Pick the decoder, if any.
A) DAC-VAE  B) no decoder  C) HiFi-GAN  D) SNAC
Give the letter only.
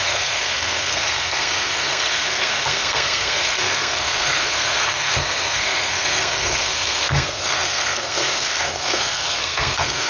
D